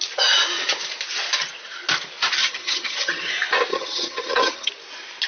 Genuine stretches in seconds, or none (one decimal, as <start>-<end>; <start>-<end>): 0.0-2.4; 3.3-3.7; 4.7-5.3